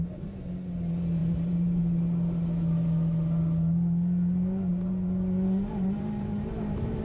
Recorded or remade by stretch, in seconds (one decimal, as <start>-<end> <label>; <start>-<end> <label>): 0.0-1.2 recorded; 1.2-1.8 remade; 1.8-4.7 recorded; 4.7-7.0 remade

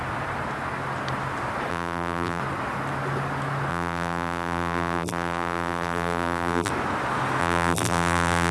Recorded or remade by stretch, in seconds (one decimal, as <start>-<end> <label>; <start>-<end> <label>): 0.0-1.7 recorded; 1.7-2.4 remade; 2.4-3.7 recorded; 3.7-6.7 remade; 6.7-7.4 recorded; 7.4-8.5 remade

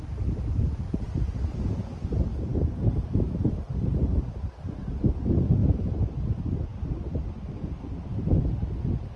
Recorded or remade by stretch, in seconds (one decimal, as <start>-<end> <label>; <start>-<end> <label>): 0.0-2.5 recorded; 2.5-4.5 remade; 4.5-5.6 recorded; 5.6-6.3 remade; 6.3-9.2 recorded

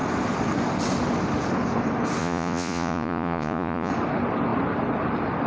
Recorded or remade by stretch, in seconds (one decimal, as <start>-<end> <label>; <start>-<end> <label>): 0.0-2.2 recorded; 2.2-3.9 remade; 3.9-5.5 recorded